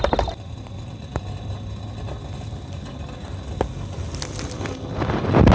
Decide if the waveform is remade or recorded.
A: recorded